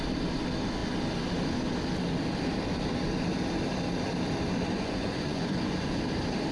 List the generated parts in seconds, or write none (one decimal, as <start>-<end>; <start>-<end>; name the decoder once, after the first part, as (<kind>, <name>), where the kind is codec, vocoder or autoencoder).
4.7-6.0 (vocoder, Vocos)